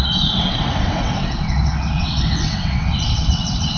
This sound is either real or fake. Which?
fake